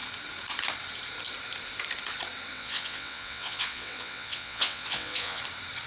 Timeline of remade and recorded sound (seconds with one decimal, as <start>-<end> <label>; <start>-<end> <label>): 0.0-2.5 recorded; 2.5-5.4 remade; 5.4-5.9 recorded